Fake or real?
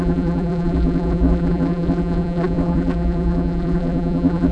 fake